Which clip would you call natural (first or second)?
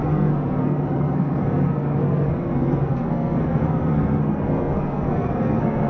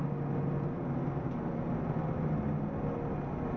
second